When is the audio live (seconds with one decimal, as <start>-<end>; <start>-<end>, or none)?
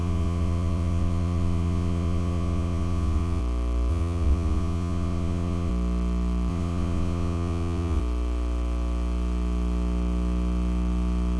3.4-3.9; 5.7-6.5; 8.0-11.4